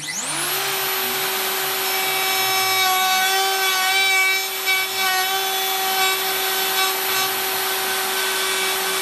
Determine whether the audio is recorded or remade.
recorded